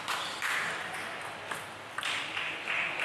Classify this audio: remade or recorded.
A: recorded